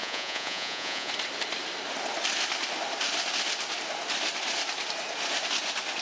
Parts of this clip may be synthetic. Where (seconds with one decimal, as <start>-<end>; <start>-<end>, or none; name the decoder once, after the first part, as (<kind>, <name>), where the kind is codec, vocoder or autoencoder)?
0.0-1.1 (vocoder, Vocos)